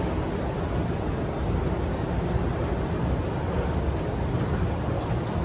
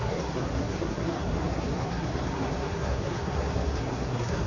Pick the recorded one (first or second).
first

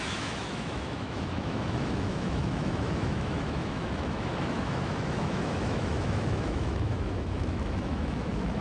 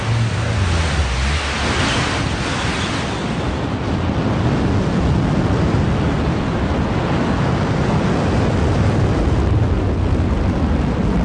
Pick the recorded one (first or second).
second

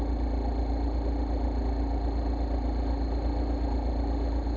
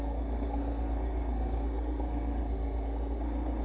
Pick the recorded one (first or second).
first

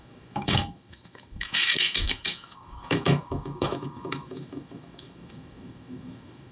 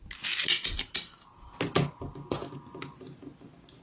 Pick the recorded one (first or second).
second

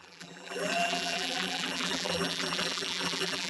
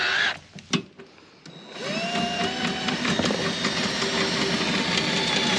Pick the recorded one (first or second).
second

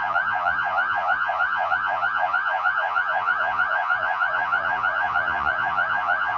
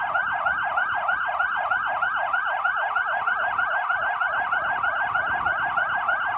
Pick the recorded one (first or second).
second